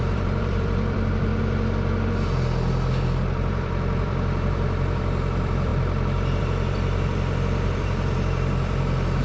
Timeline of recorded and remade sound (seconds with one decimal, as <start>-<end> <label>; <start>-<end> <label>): 0.0-1.3 remade; 1.3-3.0 recorded; 3.0-9.2 remade